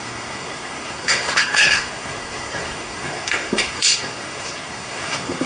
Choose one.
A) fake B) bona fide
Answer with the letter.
A